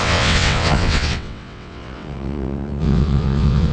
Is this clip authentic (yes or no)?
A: no